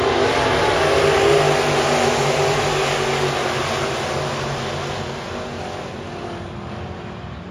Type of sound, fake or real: real